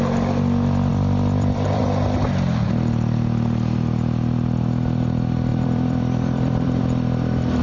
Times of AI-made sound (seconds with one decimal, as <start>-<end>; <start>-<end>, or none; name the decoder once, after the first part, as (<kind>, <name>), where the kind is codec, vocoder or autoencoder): 0.9-1.8 (vocoder, BigVGAN v2); 5.5-6.8